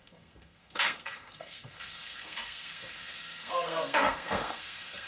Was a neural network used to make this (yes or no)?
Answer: yes